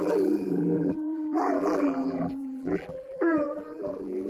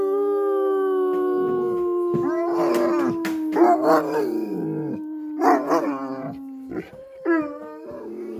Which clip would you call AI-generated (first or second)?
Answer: first